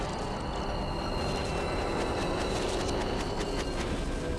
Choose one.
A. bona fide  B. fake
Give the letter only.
A